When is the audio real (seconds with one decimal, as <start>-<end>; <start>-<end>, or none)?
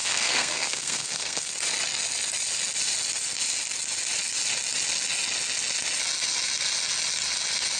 1.5-7.8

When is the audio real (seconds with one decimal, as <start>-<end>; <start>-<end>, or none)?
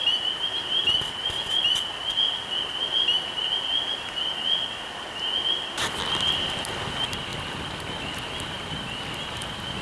0.0-9.8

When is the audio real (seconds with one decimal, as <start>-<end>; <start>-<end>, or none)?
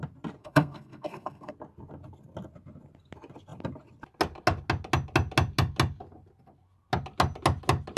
0.0-0.4; 1.5-8.0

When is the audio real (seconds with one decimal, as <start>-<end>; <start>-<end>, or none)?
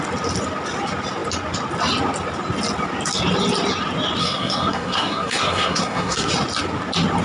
0.0-4.2; 6.3-7.2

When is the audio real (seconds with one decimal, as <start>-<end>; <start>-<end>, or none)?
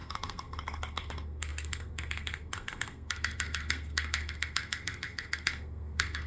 none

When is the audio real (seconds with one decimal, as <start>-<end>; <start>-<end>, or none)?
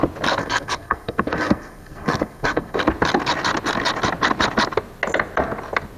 0.0-0.4; 2.8-6.0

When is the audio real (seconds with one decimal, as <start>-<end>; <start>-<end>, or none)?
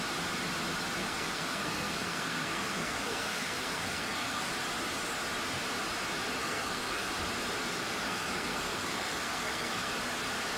0.0-1.0; 4.5-6.4; 7.1-7.7; 9.9-10.6